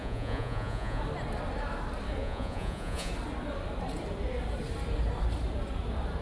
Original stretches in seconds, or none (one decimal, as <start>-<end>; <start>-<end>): 1.0-2.2; 3.1-6.2